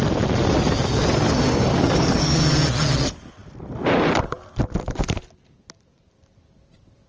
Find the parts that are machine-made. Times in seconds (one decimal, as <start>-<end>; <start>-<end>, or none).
1.7-2.4